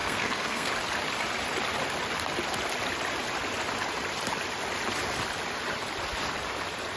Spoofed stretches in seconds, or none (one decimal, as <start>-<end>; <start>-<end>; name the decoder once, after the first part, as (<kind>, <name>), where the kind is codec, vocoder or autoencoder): 0.0-0.7 (codec, SNAC)